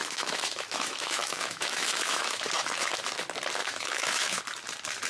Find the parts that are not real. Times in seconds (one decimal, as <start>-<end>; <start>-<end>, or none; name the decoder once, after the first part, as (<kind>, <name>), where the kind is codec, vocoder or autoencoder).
0.0-2.9 (autoencoder, DAC-VAE); 3.6-4.4